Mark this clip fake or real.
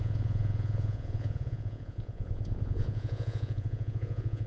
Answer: fake